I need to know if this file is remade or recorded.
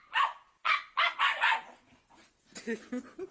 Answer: remade